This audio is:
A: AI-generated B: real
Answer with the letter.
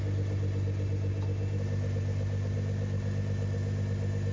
B